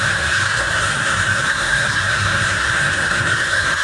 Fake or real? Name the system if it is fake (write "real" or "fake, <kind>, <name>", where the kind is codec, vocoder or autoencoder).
fake, codec, SNAC